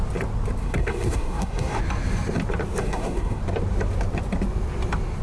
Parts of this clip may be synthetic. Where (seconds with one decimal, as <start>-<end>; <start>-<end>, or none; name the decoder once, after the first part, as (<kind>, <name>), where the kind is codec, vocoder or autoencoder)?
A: 0.6-1.8 (codec, SNAC); 2.8-3.4